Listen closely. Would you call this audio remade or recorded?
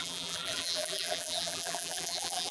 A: remade